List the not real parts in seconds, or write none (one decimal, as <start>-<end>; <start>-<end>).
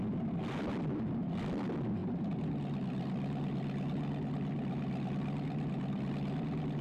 none